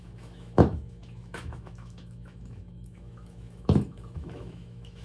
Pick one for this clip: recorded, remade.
remade